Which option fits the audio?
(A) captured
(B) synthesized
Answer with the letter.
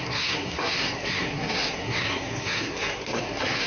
B